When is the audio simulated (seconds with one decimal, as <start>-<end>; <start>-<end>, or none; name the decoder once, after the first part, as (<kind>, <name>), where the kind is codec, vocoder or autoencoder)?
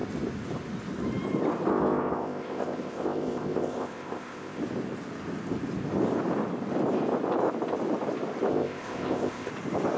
1.7-4.6 (codec, ZipCodec); 8.5-9.5